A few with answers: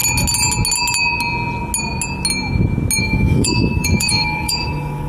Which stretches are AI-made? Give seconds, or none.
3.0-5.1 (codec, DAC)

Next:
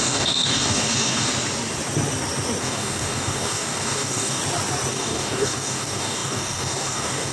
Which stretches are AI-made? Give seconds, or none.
0.0-1.3 (codec, DAC); 2.6-4.4; 4.9-7.3

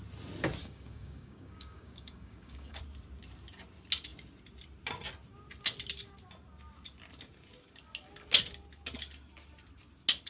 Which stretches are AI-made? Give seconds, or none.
0.6-2.8 (codec, DAC)

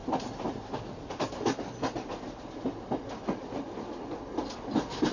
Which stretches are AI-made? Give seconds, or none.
none

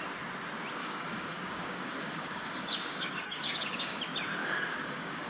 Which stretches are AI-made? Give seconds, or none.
0.8-4.0 (codec, DAC); 4.4-5.3